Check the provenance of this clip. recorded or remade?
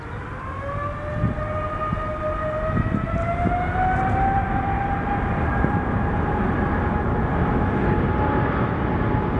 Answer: recorded